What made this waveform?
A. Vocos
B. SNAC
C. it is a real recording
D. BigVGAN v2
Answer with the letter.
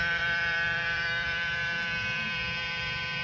D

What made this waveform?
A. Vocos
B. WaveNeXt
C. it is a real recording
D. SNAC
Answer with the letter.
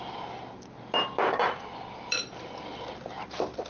C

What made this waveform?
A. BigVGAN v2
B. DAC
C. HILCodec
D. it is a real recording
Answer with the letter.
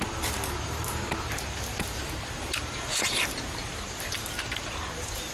A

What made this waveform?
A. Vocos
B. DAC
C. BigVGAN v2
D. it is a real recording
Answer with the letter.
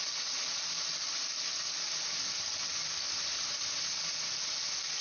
D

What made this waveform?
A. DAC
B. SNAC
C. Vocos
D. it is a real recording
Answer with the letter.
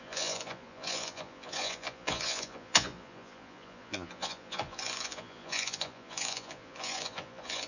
C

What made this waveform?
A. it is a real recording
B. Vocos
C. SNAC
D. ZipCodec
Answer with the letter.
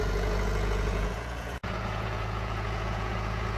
B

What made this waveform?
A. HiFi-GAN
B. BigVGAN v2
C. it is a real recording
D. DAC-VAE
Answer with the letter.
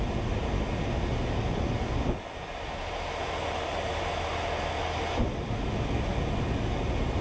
C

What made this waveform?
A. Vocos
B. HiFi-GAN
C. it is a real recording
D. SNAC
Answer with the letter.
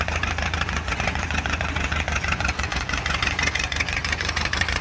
A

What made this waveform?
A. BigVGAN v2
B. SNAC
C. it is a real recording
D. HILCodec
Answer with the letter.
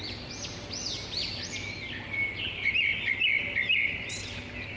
C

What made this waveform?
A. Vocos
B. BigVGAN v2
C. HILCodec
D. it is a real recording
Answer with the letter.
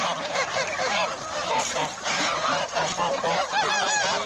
B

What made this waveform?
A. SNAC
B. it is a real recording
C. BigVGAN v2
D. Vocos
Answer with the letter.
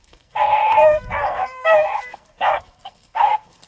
A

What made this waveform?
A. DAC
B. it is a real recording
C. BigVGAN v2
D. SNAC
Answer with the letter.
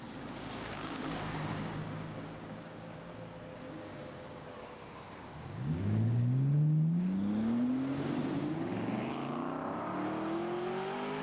A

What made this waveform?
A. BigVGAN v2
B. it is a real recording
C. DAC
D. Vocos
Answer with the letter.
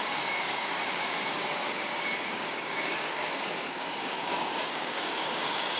C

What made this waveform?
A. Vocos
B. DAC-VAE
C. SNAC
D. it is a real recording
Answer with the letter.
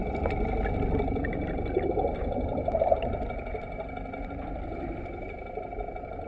D